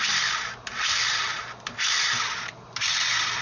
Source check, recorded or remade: recorded